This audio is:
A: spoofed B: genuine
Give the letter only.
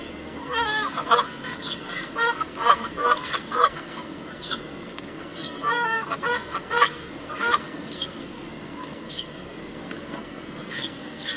A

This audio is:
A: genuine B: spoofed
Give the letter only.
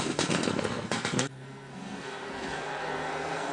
B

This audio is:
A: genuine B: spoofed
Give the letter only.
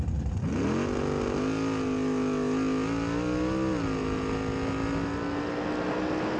A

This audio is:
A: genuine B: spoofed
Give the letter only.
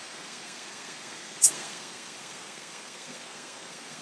B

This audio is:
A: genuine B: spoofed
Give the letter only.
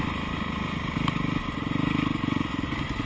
A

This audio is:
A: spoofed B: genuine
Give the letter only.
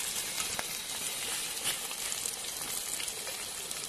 B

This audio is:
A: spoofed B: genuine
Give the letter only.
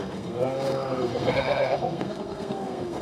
A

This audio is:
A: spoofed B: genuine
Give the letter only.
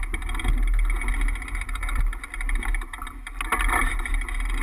B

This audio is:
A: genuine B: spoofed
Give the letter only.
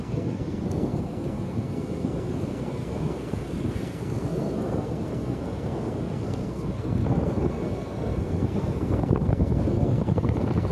B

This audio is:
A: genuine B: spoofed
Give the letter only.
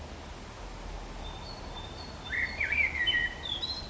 A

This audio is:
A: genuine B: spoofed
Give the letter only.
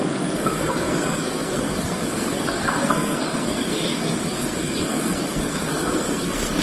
B